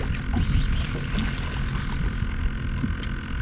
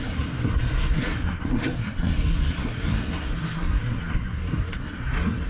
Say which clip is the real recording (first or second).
first